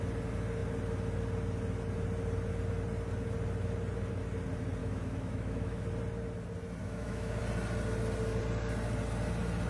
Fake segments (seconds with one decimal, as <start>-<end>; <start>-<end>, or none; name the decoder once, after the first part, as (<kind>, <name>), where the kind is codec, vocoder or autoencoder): 4.8-5.8 (autoencoder, DAC-VAE); 6.8-7.4